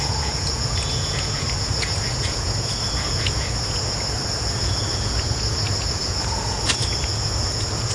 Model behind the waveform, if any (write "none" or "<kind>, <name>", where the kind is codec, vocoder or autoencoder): vocoder, Vocos